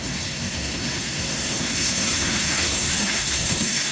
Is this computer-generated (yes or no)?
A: yes